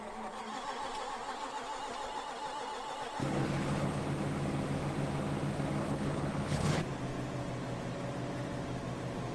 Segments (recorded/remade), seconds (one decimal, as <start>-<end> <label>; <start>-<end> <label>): 0.0-3.2 recorded; 3.2-4.0 remade; 4.0-5.8 recorded; 5.8-6.9 remade; 6.9-9.3 recorded